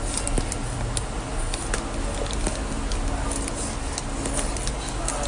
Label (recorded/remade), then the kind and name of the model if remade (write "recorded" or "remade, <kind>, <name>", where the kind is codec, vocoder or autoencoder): recorded